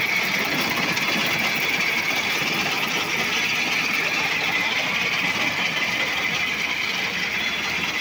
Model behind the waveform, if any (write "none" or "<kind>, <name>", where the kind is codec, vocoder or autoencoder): none